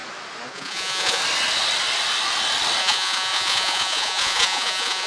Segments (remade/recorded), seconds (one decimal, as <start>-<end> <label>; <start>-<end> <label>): 0.0-0.5 recorded; 0.5-1.2 remade; 1.2-2.8 recorded; 2.8-5.1 remade